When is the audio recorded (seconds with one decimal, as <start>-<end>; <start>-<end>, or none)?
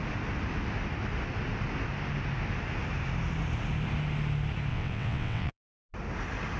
0.0-4.7; 5.9-6.6